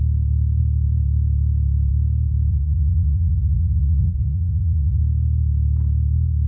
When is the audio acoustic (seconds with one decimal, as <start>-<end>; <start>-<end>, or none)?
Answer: 0.0-2.5; 5.0-6.5